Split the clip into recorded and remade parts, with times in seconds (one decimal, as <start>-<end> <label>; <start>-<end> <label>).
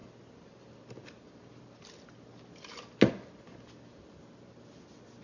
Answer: 0.0-5.2 recorded